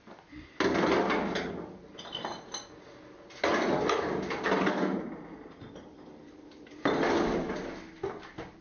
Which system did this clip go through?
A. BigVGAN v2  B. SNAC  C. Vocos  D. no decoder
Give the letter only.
D